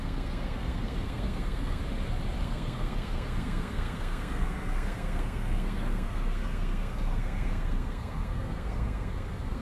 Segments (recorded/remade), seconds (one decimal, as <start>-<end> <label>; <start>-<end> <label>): 0.0-1.8 remade; 1.8-2.4 recorded; 2.4-9.6 remade